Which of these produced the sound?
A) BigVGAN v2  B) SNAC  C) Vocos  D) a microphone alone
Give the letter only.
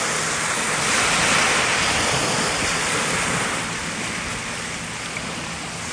D